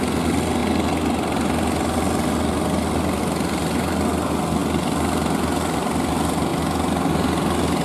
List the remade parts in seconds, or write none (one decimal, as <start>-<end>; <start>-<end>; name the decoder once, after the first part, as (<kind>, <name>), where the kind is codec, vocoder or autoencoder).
none